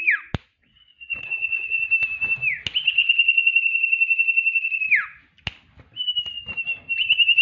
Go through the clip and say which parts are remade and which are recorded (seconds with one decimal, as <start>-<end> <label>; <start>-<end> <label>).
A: 0.0-0.6 recorded; 0.6-1.9 remade; 1.9-7.4 recorded